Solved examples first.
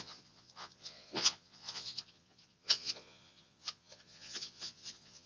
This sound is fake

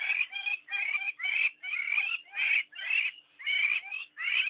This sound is real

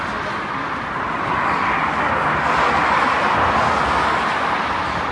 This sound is real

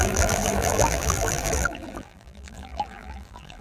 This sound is fake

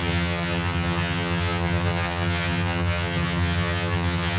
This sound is fake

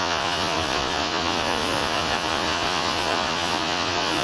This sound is fake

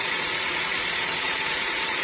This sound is fake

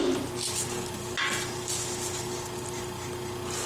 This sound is real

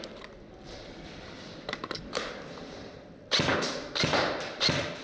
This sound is fake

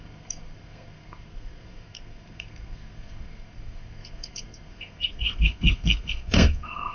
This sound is fake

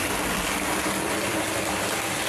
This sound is real